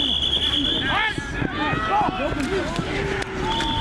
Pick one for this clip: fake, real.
real